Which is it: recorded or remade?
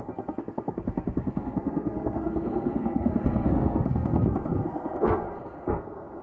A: remade